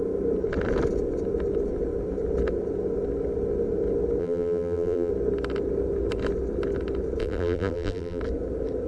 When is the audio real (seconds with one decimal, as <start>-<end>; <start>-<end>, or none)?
0.0-4.2; 5.1-7.2; 8.2-8.9